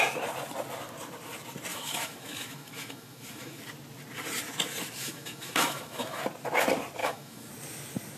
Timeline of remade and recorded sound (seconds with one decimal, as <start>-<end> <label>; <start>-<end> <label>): 0.0-1.7 recorded; 1.7-3.6 remade; 3.6-5.0 recorded; 5.0-6.2 remade; 6.2-7.0 recorded; 7.0-7.5 remade; 7.5-8.2 recorded